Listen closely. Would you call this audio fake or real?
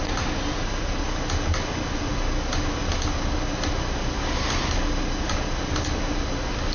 real